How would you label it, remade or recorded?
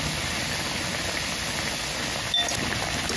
recorded